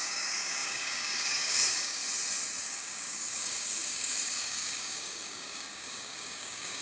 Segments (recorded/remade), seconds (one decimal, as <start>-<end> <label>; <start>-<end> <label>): 0.0-2.0 remade; 2.0-2.6 recorded; 2.6-6.8 remade